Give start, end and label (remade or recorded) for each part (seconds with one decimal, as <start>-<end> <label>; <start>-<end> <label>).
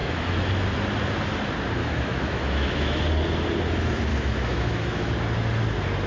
0.0-0.5 remade; 0.5-1.8 recorded; 1.8-3.0 remade; 3.0-4.1 recorded; 4.1-5.1 remade; 5.1-6.1 recorded